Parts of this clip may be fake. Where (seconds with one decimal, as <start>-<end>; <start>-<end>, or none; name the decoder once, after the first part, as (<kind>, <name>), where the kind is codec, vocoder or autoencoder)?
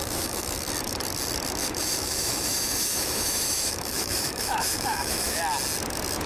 0.0-0.7 (autoencoder, DAC-VAE); 1.6-5.4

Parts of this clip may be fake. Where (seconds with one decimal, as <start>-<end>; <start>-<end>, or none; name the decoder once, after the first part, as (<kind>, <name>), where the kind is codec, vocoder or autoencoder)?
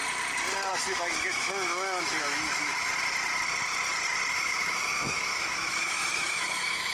0.7-2.9 (autoencoder, DAC-VAE); 4.3-6.9